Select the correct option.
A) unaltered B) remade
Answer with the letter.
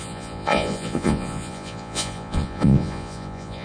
B